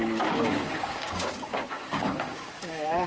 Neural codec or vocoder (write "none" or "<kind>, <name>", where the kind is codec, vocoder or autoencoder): codec, DAC